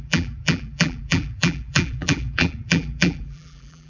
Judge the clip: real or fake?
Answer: fake